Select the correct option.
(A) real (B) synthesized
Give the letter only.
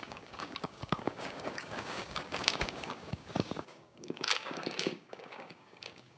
B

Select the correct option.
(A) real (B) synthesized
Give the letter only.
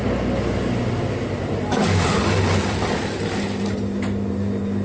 A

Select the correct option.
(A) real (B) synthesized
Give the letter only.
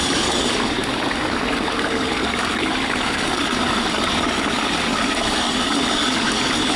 B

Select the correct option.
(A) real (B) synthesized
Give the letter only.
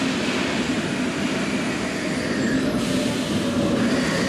A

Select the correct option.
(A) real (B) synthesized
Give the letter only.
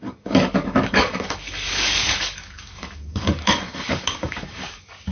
B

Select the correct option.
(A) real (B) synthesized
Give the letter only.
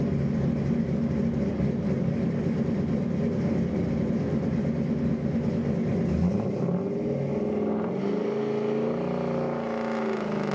A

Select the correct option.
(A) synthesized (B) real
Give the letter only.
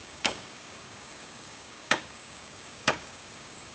A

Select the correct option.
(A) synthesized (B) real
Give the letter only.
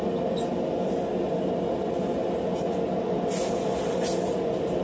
B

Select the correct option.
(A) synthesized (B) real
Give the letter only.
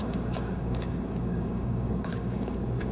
A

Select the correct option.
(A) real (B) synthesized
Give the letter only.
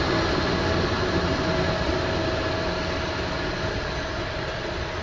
A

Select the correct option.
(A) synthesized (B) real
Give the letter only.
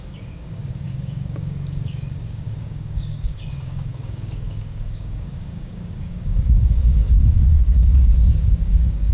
A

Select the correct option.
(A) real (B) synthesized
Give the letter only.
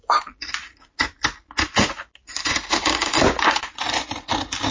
A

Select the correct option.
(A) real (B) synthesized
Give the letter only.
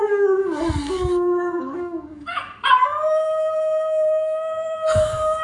B